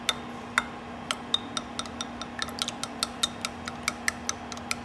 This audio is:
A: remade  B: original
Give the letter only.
B